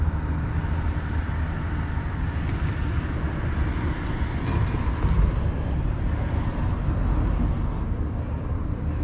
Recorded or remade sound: recorded